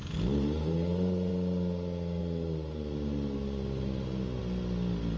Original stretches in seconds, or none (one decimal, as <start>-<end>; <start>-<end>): 1.3-2.2; 4.4-5.2